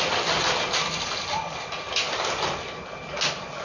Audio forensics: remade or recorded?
recorded